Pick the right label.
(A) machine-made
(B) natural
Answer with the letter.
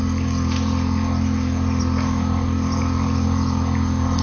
B